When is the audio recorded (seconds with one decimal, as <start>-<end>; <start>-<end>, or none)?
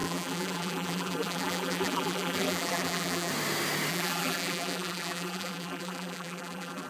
3.3-3.9